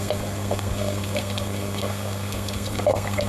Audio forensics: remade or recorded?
remade